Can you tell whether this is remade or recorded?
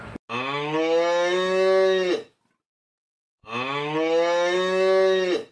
recorded